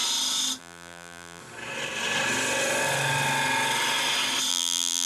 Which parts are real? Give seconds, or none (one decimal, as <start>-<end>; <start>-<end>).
0.0-0.6; 1.4-4.5